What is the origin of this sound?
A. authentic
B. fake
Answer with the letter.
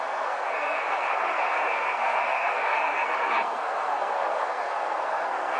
B